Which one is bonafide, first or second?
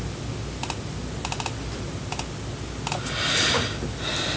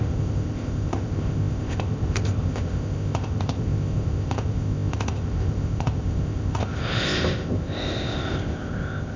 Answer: first